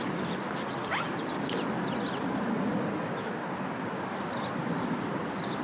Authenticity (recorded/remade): recorded